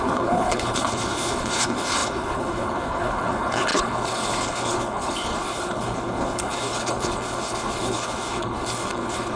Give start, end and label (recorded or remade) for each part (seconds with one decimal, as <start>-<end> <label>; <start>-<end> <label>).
0.0-9.4 remade

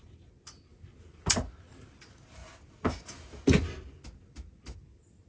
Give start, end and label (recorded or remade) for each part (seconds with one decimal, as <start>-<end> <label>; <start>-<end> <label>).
0.0-5.3 recorded